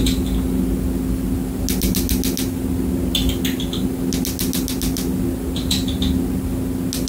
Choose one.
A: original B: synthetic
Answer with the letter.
A